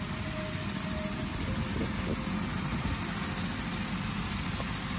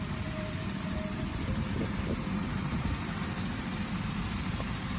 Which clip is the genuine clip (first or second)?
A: first